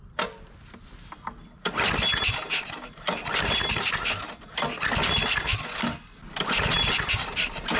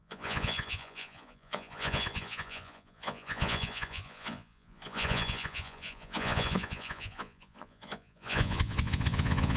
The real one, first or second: first